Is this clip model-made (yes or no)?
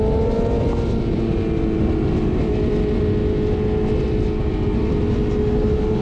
no